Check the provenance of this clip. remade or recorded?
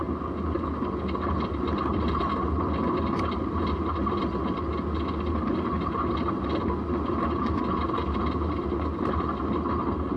recorded